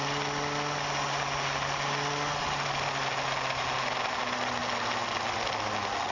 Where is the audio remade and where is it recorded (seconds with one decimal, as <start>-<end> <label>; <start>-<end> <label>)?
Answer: 0.0-6.1 recorded